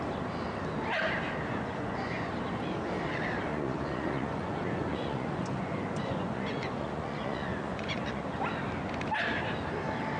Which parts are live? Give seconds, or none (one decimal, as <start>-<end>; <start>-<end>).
0.0-1.5; 2.3-3.5; 8.4-10.2